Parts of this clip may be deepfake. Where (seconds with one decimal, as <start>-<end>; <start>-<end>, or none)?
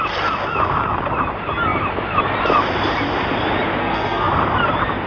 3.8-4.3